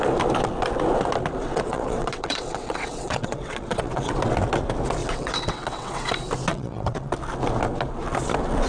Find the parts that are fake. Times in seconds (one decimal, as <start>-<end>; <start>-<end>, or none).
1.4-4.1; 5.0-6.1; 6.5-7.1